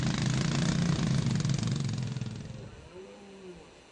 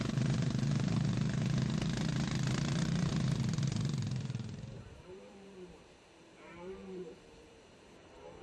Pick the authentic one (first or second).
first